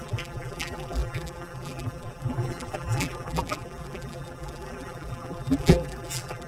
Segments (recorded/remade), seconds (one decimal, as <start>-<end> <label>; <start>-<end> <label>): 0.0-6.5 remade